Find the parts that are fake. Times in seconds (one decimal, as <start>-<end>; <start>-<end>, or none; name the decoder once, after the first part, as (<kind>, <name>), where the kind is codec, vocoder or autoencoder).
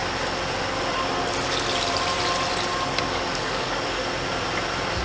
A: 3.0-4.0 (codec, DAC)